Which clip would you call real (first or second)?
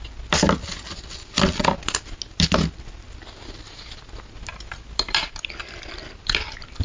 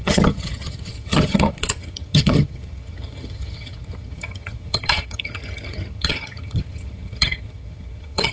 first